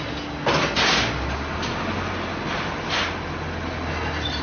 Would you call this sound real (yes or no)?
yes